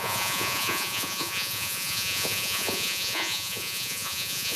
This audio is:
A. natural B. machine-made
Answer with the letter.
B